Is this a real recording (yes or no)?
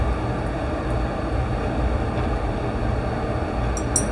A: yes